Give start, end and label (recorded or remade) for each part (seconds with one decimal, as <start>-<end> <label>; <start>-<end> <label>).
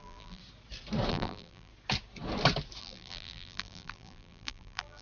0.0-0.4 remade; 0.4-1.1 recorded; 1.1-1.7 remade; 1.7-2.8 recorded; 2.8-5.0 remade